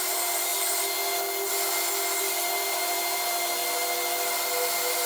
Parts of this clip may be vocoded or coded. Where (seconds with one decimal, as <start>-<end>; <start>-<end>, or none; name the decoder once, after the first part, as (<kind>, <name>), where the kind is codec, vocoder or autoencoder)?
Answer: 0.0-0.5 (vocoder, BigVGAN v2); 2.2-3.6